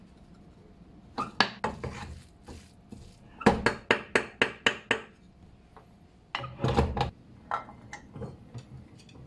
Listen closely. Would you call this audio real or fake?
real